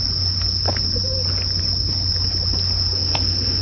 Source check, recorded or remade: recorded